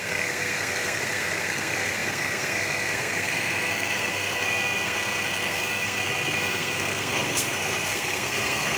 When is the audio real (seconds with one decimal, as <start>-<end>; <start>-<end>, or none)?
none